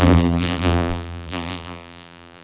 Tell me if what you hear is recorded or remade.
remade